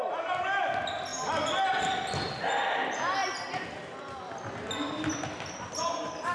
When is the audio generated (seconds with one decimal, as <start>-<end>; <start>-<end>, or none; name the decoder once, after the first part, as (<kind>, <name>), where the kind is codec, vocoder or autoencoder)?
none